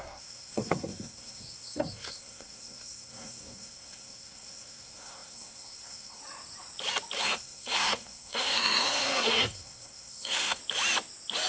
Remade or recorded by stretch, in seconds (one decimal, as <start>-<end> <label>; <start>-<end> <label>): 0.0-6.2 remade; 6.2-7.2 recorded; 7.2-10.6 remade; 10.6-11.5 recorded